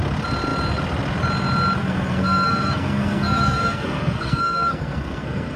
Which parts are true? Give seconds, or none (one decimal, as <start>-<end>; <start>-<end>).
0.0-1.8